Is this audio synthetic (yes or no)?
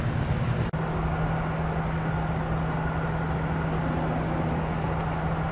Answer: no